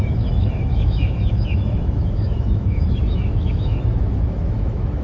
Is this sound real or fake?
fake